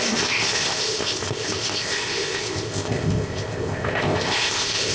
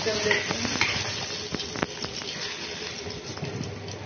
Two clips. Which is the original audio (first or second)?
second